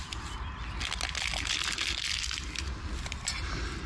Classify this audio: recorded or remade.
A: recorded